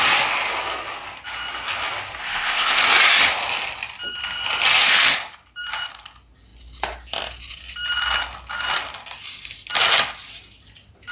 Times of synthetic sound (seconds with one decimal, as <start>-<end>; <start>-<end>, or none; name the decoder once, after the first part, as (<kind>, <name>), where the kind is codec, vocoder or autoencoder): 2.2-2.8 (codec, ZipCodec)